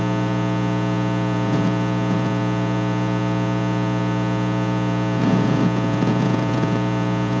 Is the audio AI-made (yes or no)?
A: yes